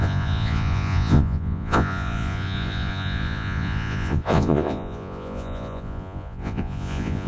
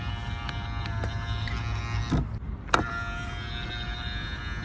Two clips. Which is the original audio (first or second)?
second